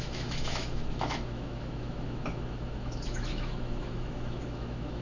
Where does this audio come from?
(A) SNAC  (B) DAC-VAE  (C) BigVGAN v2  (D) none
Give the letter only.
B